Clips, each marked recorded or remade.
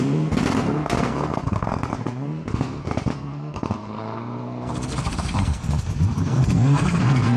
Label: remade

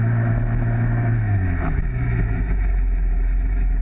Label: remade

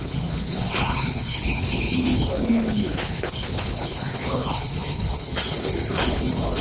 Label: remade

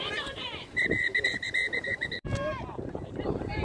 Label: remade